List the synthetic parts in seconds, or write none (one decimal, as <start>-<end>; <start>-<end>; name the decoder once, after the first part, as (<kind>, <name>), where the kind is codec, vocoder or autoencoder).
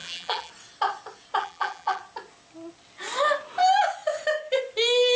0.0-0.5 (vocoder, BigVGAN v2); 1.4-2.0